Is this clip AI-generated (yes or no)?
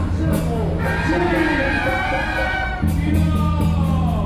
no